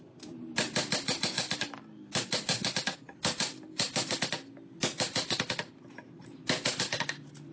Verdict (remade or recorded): recorded